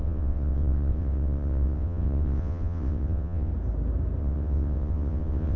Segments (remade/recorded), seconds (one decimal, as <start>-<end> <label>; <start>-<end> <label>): 0.0-3.5 remade; 3.5-4.2 recorded; 4.2-5.6 remade